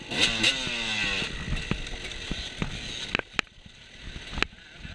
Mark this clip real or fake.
real